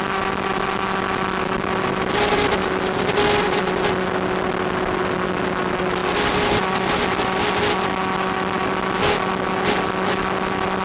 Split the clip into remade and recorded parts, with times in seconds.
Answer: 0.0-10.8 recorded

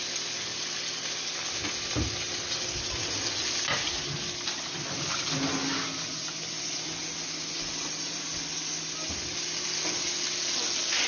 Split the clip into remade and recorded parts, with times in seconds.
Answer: 0.0-11.1 recorded

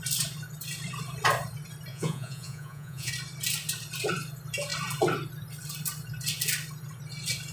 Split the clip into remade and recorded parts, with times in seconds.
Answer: 0.0-1.9 recorded; 1.9-3.1 remade; 3.1-7.5 recorded